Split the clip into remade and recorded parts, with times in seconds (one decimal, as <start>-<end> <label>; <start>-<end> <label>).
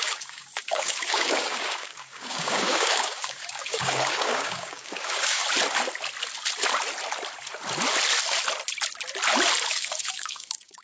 0.0-5.4 remade; 5.4-9.7 recorded; 9.7-10.8 remade